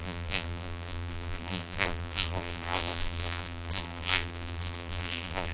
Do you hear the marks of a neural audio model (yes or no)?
yes